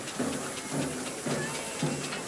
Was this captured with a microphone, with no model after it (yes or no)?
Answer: yes